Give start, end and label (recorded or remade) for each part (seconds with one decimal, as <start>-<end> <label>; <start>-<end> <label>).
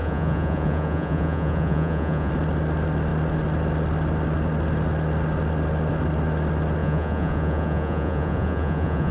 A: 0.0-2.3 remade; 2.3-6.8 recorded; 6.8-9.1 remade